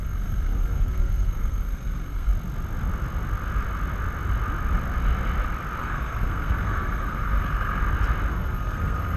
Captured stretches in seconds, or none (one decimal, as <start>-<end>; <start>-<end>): 2.3-5.8; 7.8-8.3